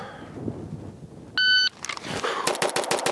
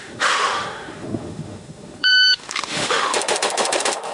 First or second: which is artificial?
second